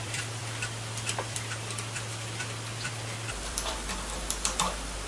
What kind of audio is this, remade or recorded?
remade